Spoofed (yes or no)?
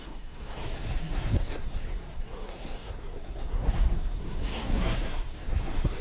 yes